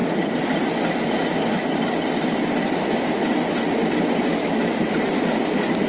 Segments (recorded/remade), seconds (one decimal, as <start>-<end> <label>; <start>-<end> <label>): 0.0-4.3 recorded; 4.3-4.9 remade; 4.9-5.9 recorded